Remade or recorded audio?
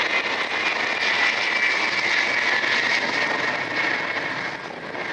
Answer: recorded